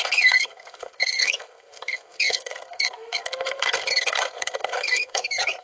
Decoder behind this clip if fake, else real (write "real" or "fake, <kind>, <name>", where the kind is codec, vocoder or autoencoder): fake, codec, SNAC